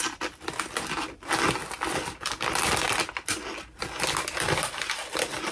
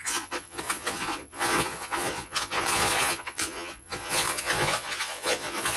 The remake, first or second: second